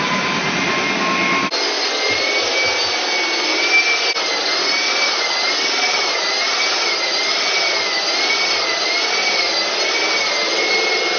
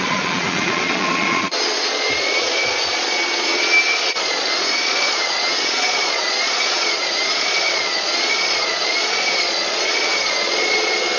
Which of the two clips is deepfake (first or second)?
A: second